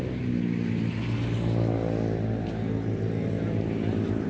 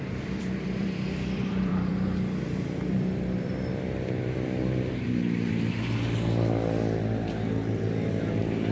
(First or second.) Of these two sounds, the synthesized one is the second